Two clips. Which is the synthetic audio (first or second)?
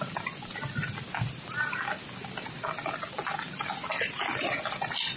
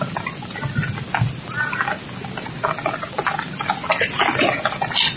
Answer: first